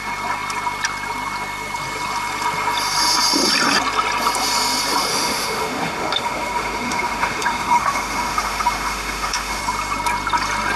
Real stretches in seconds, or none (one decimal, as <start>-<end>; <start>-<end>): 0.0-5.1; 9.6-10.8